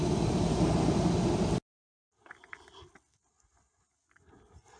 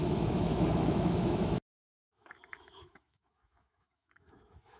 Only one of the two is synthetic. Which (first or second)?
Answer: second